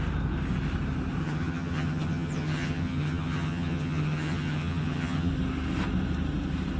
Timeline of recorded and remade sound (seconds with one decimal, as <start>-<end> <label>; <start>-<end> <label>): 0.0-1.2 recorded; 1.2-5.3 remade; 5.3-6.8 recorded